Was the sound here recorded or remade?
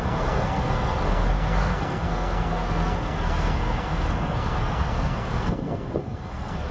remade